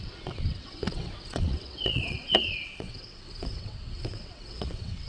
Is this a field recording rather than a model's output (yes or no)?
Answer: no